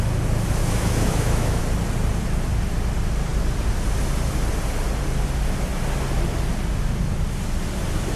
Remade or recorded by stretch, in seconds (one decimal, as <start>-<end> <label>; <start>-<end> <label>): 0.0-0.6 recorded; 0.6-1.6 remade; 1.6-8.2 recorded